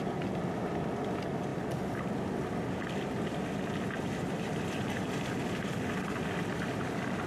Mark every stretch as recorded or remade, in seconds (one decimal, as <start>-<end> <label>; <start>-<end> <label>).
0.0-7.3 recorded